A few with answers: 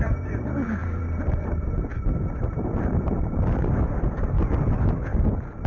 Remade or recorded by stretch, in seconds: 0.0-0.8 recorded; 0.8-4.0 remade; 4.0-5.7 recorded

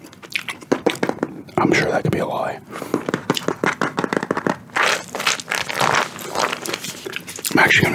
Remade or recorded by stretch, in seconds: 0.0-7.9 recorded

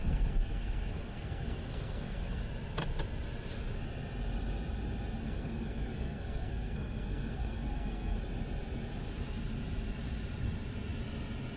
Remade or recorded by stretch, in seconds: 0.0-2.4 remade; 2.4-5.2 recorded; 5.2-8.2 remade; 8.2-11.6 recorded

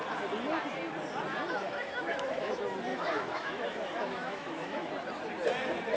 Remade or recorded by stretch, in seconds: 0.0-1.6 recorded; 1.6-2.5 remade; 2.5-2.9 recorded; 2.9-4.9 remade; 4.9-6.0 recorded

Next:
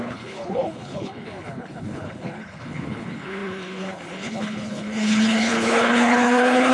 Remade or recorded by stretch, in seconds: 0.0-6.7 remade

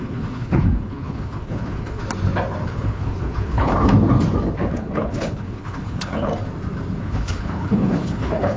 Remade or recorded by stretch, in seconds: 0.0-2.0 remade; 2.0-2.7 recorded; 2.7-3.7 remade; 3.7-4.7 recorded; 4.7-6.3 remade; 6.3-7.0 recorded; 7.0-8.6 remade